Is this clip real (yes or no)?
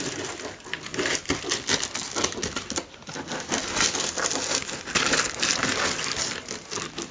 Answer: yes